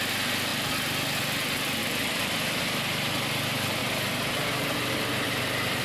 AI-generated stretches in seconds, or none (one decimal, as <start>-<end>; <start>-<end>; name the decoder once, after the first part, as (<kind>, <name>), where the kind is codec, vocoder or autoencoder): 1.8-2.6 (vocoder, BigVGAN v2); 3.8-5.8